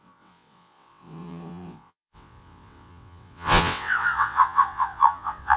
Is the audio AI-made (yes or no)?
yes